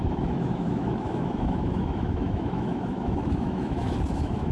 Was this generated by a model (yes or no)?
yes